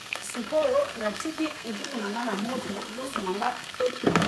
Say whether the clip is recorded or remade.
remade